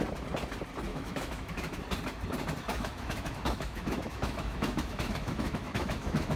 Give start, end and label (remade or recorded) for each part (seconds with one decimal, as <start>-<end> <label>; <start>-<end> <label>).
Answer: 0.0-0.9 recorded; 0.9-1.8 remade; 1.8-2.7 recorded; 2.7-6.4 remade